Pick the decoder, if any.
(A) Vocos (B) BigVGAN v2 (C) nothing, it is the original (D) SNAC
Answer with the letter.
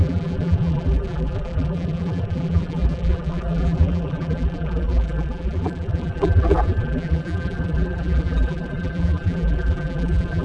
B